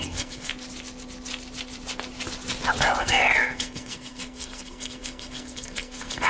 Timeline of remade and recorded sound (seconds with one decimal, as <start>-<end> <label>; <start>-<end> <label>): 0.0-0.5 remade; 0.5-3.0 recorded; 3.0-6.3 remade